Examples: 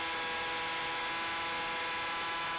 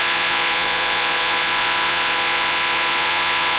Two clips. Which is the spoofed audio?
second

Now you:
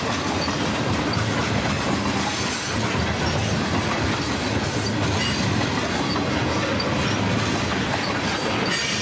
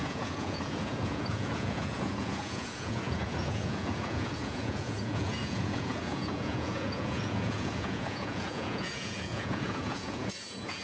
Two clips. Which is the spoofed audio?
second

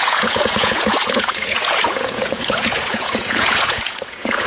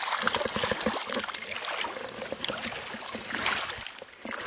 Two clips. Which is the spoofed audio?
first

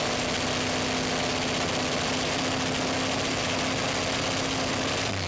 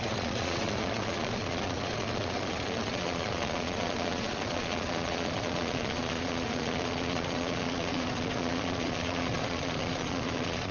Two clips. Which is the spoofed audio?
second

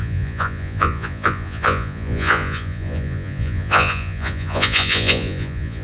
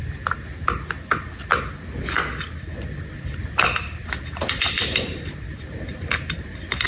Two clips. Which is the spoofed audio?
first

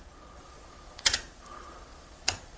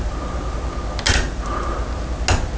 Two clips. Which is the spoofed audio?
first